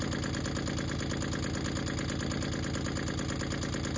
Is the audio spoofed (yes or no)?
no